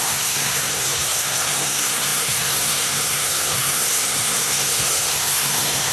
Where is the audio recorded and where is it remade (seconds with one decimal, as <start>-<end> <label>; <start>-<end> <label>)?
0.0-5.9 remade